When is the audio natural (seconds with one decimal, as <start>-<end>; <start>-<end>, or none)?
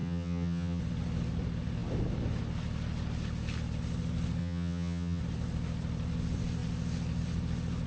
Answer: 0.8-4.4; 5.2-7.9